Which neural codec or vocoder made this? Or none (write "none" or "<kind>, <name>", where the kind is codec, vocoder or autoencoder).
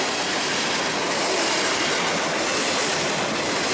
none